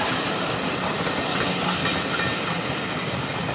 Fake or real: real